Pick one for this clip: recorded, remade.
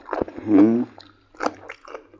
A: recorded